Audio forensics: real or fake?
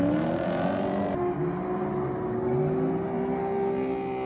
real